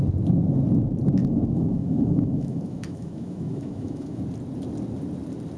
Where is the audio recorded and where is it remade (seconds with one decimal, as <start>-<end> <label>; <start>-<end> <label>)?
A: 0.0-1.2 recorded; 1.2-4.2 remade; 4.2-5.6 recorded